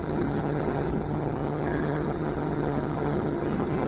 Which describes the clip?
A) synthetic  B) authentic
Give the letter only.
A